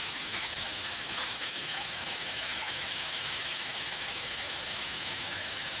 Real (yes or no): no